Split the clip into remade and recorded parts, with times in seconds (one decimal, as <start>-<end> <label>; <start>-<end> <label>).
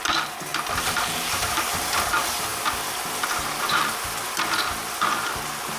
0.0-0.5 recorded; 0.5-1.8 remade; 1.8-5.8 recorded